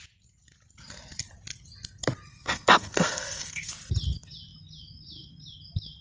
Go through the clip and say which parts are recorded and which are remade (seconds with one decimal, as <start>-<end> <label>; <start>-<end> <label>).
0.0-2.3 recorded; 2.3-3.7 remade; 3.7-6.0 recorded